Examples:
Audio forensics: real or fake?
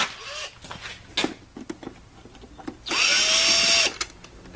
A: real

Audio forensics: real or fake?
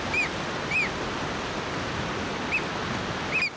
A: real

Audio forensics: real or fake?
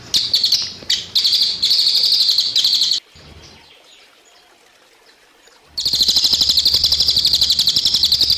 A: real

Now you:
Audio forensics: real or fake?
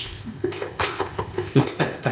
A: fake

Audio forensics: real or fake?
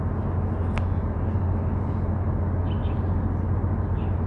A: real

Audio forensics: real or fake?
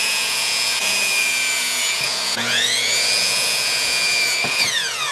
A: fake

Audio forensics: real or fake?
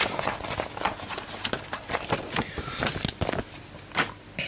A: real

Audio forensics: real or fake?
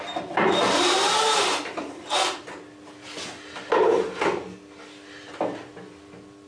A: real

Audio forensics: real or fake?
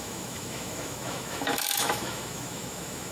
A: fake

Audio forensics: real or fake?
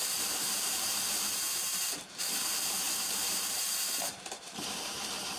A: fake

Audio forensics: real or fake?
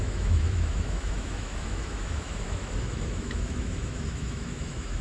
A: fake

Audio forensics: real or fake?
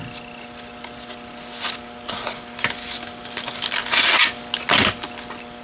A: real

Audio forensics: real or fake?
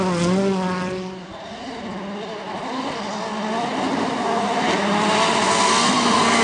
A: real